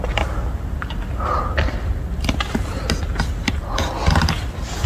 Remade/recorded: recorded